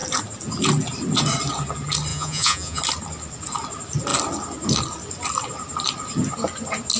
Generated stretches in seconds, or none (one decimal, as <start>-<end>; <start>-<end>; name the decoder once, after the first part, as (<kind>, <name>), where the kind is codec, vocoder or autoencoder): 2.1-2.8 (vocoder, Vocos)